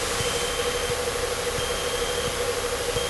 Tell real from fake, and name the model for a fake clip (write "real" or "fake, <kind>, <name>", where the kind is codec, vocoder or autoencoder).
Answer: real